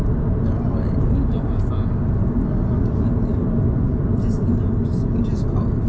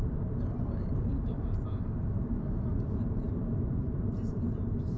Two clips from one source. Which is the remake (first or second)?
second